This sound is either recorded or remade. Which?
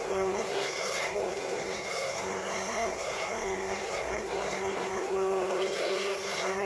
remade